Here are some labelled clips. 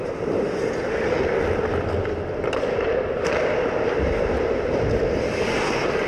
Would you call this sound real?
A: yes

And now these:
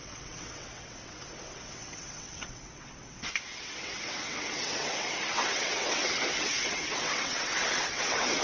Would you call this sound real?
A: no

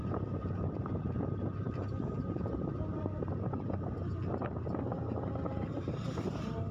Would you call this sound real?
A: no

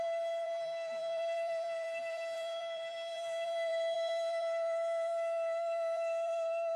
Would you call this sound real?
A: no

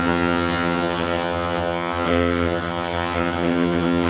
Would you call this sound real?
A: no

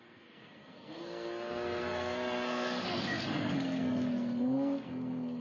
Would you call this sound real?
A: no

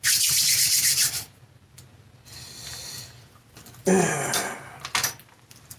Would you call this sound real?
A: yes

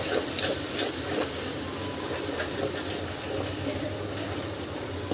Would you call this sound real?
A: yes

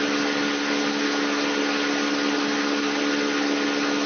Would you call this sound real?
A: yes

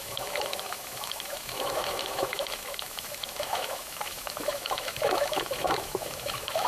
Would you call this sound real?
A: no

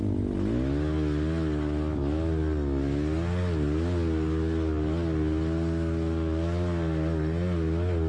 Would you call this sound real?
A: yes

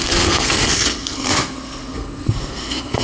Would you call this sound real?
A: no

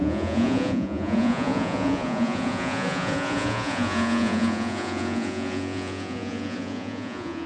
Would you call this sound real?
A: no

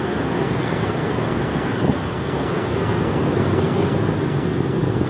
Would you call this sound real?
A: no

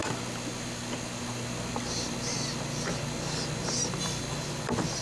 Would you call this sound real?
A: yes